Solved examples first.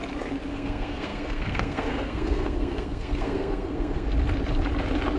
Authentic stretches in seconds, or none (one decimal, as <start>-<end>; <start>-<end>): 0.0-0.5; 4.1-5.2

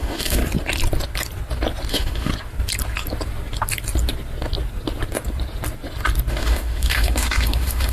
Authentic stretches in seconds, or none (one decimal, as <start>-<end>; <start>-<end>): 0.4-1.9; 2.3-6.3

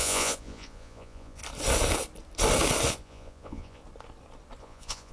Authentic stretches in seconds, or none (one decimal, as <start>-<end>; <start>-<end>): 1.4-2.9; 3.8-4.6

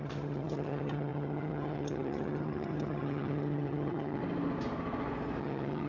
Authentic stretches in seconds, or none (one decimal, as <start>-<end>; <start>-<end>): 4.2-5.4